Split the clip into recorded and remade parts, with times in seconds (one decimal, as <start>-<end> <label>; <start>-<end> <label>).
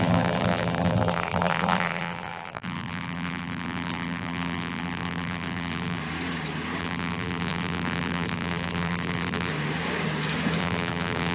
0.0-6.0 remade; 6.0-6.8 recorded; 6.8-9.5 remade; 9.5-10.6 recorded; 10.6-11.3 remade